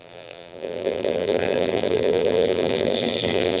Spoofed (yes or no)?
yes